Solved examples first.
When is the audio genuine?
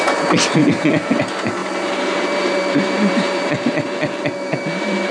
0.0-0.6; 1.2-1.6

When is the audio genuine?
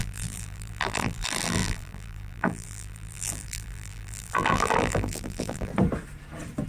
5.7-6.7